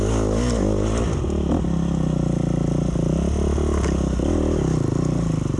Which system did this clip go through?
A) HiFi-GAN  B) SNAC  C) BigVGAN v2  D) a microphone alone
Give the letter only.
D